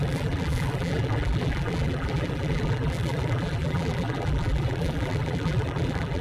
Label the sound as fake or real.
fake